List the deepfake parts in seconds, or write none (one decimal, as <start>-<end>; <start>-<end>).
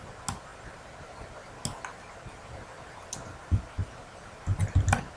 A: none